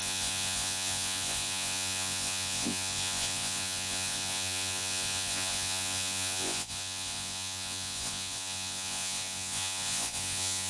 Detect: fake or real fake